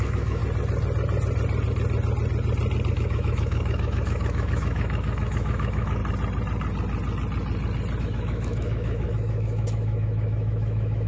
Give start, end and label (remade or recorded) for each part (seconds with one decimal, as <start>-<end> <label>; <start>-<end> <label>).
0.0-0.4 remade; 0.4-2.9 recorded; 2.9-6.0 remade; 6.0-8.0 recorded; 8.0-11.1 remade